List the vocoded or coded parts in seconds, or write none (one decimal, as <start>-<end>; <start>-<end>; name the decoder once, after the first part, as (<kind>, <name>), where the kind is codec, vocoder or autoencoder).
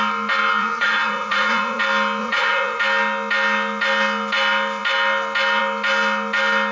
0.6-1.8 (vocoder, Vocos); 2.2-2.8